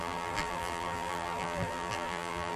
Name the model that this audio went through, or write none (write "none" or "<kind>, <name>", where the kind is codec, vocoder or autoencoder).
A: vocoder, BigVGAN v2